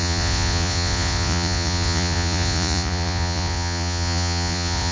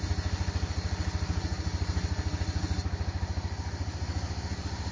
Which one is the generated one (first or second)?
first